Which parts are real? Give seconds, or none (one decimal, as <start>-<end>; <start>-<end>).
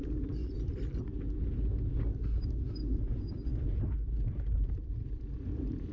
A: 0.0-0.4; 1.0-2.1; 2.6-3.5; 4.9-5.9